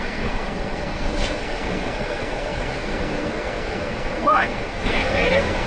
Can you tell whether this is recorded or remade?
remade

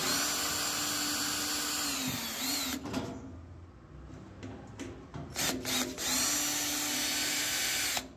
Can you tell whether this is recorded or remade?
recorded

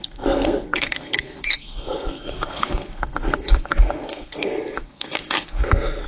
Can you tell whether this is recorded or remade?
remade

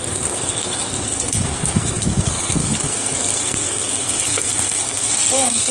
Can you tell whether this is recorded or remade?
remade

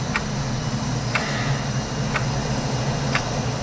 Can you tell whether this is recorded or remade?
recorded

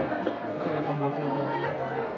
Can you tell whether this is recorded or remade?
remade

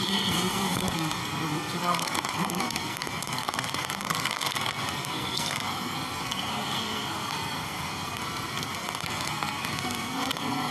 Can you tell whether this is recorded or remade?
remade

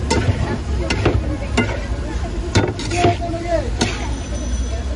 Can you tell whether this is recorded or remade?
recorded